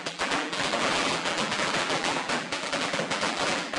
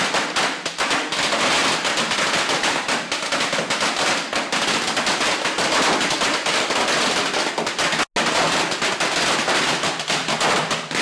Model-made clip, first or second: first